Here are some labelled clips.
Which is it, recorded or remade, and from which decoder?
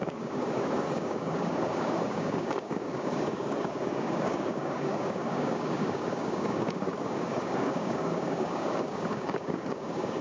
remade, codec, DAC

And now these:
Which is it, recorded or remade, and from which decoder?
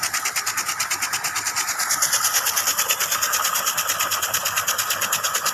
recorded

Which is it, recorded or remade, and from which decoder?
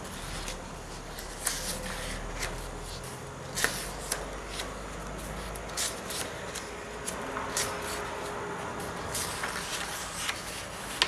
recorded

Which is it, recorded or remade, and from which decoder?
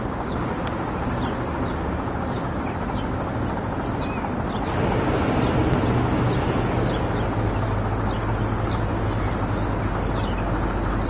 recorded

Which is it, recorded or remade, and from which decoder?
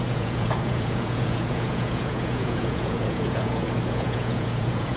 remade, vocoder, Vocos